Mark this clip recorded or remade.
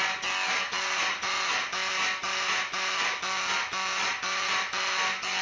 recorded